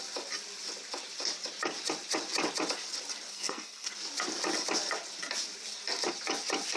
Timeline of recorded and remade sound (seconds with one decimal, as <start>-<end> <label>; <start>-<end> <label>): 0.0-3.3 recorded; 3.3-3.9 remade; 3.9-6.8 recorded